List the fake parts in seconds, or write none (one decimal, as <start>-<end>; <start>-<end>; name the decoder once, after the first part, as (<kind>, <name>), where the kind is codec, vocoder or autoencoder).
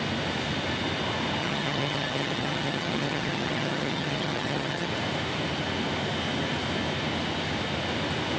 1.4-4.9 (vocoder, HiFi-GAN)